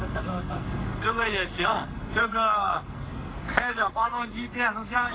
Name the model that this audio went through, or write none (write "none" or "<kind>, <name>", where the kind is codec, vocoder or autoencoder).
codec, SNAC